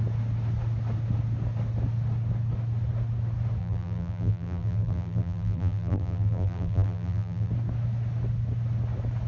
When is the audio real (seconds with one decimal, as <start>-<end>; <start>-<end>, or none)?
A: 0.0-3.6; 7.5-9.3